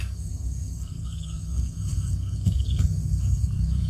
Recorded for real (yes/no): no